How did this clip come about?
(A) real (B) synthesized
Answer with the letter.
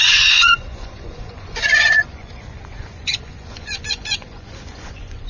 B